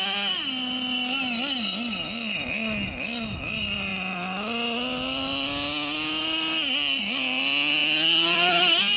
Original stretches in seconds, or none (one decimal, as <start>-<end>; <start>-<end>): 0.0-9.0